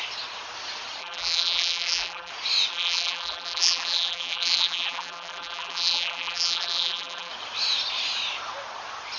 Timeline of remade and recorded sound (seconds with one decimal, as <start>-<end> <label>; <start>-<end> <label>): 0.0-1.0 recorded; 1.0-2.3 remade; 2.3-2.7 recorded; 2.7-7.3 remade; 7.3-9.2 recorded